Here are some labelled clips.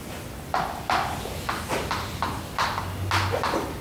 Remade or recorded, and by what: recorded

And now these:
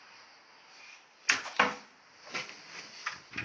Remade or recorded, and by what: recorded